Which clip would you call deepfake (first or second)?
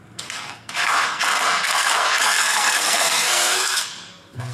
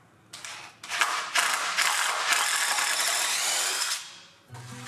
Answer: first